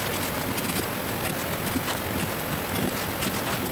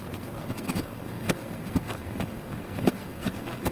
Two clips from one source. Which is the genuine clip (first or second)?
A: first